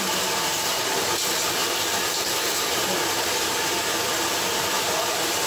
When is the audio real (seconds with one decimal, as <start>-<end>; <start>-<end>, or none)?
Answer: 0.0-5.5